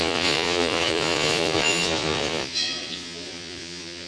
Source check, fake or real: fake